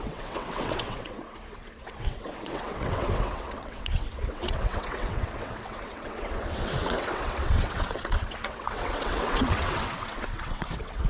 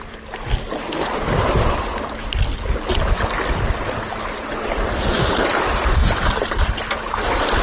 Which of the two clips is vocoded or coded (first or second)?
first